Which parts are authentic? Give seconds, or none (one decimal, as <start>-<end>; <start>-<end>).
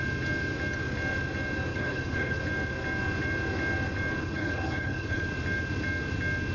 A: 0.0-1.7; 2.4-4.2; 5.2-6.5